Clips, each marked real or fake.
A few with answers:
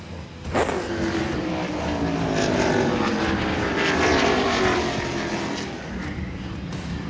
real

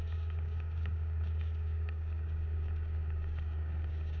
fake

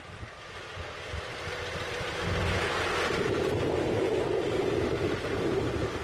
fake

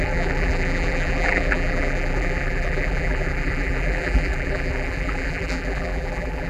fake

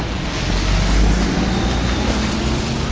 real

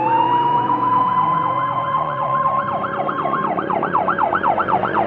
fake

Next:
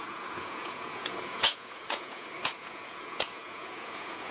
fake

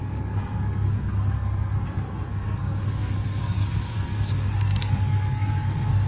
fake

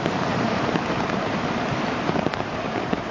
fake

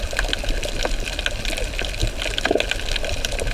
real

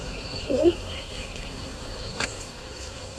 fake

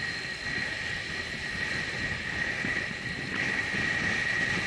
real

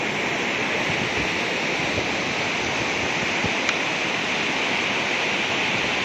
real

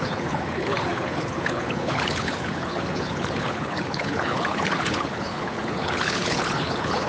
fake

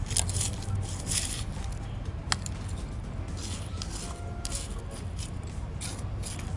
real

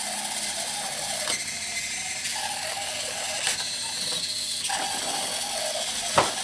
real